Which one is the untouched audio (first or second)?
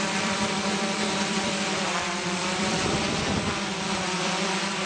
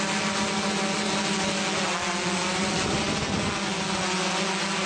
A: second